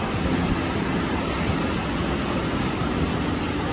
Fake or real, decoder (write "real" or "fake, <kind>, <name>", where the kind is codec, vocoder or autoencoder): real